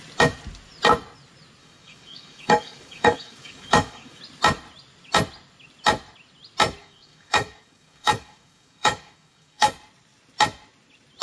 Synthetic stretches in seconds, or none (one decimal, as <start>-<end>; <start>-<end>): 1.6-4.2; 6.8-9.7